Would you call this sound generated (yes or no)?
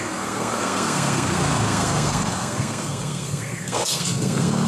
yes